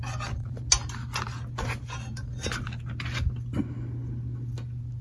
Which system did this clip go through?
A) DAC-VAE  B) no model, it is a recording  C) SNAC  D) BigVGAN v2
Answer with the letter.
B